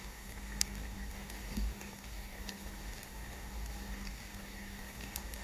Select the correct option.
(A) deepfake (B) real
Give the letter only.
A